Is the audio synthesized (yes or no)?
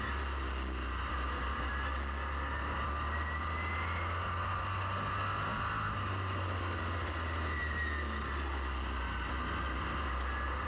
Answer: no